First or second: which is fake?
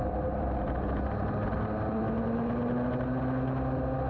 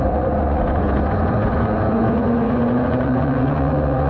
second